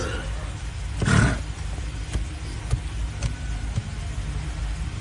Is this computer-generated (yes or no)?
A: no